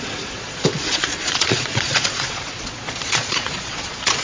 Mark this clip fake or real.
fake